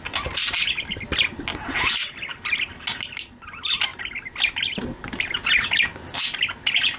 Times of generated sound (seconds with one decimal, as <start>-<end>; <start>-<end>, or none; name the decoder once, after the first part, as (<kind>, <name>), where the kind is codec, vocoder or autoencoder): 3.9-4.8 (vocoder, BigVGAN v2)